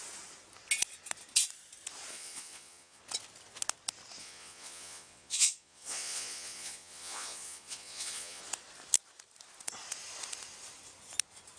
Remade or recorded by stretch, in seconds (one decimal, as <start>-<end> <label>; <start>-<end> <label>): 0.0-2.1 recorded; 2.1-3.0 remade; 3.0-4.2 recorded; 4.2-8.4 remade; 8.4-11.6 recorded